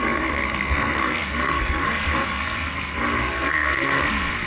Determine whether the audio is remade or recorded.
remade